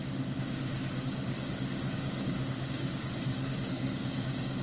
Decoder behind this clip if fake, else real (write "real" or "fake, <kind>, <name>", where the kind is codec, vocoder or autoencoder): fake, codec, DAC